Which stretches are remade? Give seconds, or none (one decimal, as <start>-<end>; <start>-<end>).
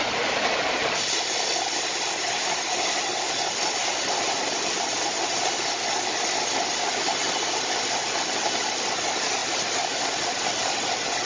none